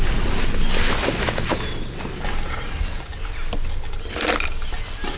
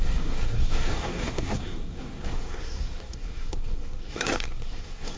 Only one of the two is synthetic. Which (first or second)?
second